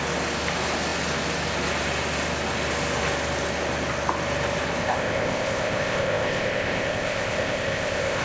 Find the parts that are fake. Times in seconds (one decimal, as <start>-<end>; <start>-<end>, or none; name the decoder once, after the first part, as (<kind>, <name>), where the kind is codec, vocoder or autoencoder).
4.8-8.2 (codec, ZipCodec)